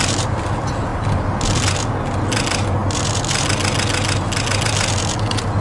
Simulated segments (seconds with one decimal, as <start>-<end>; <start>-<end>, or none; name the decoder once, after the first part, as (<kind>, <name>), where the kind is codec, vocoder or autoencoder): none